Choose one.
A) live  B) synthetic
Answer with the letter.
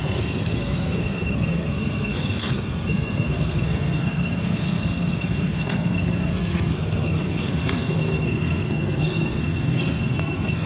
B